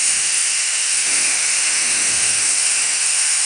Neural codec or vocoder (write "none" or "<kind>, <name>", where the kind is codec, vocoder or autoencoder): autoencoder, DAC-VAE